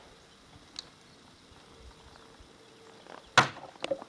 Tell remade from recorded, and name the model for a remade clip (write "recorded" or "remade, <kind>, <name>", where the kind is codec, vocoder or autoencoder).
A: recorded